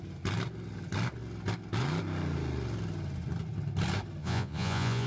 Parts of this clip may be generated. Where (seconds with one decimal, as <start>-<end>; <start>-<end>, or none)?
4.2-5.1